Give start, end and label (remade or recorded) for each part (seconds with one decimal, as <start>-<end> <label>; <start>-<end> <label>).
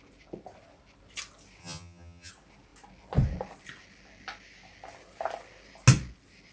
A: 0.0-1.6 recorded; 1.6-2.3 remade; 2.3-6.5 recorded